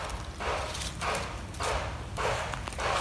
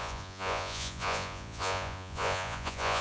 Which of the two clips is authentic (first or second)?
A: first